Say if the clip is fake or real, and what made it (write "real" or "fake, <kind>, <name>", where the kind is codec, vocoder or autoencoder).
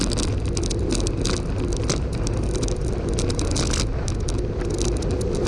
real